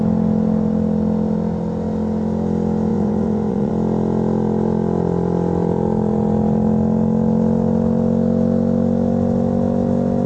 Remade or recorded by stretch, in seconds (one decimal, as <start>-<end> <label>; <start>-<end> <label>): 0.0-2.9 recorded; 2.9-3.7 remade; 3.7-10.3 recorded